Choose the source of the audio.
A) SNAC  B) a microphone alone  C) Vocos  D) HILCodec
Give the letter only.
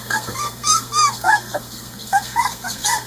A